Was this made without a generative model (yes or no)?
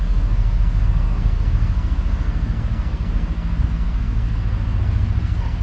no